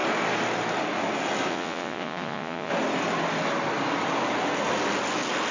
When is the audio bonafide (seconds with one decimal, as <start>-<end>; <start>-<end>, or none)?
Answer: 0.0-1.5; 2.7-5.5